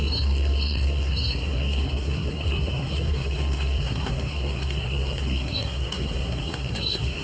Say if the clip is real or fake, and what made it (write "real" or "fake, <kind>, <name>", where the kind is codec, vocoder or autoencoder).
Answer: fake, codec, SNAC